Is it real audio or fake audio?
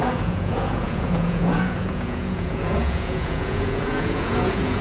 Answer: fake